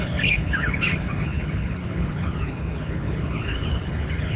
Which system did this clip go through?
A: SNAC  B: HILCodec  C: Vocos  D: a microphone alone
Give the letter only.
B